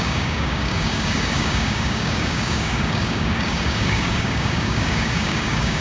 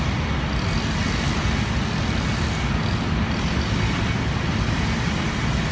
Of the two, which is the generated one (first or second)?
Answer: first